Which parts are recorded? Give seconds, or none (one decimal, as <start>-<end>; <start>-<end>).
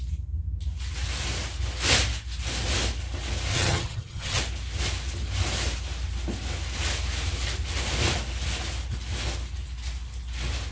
0.0-3.5; 4.4-10.7